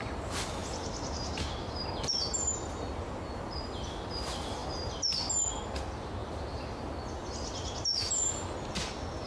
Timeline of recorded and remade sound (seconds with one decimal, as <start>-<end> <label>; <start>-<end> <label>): 0.0-9.3 recorded